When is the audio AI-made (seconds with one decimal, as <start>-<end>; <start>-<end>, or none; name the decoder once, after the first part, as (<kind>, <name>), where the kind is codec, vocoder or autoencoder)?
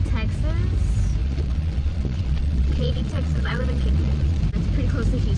1.2-4.4 (vocoder, Vocos)